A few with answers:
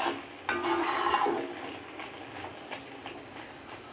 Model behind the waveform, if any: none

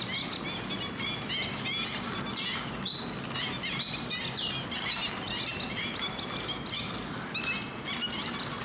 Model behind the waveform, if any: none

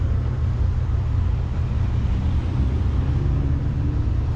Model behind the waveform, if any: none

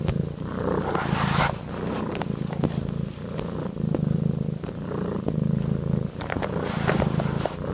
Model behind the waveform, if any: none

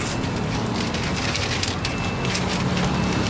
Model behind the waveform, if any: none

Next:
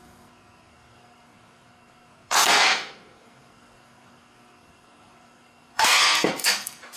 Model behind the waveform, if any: codec, SNAC